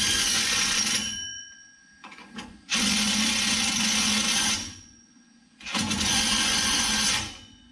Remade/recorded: remade